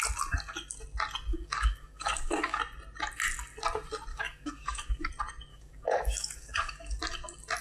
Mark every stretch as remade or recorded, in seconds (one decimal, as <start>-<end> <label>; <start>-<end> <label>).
0.0-1.3 recorded; 1.3-2.6 remade; 2.6-4.1 recorded; 4.1-5.1 remade; 5.1-5.5 recorded; 5.5-7.0 remade; 7.0-7.6 recorded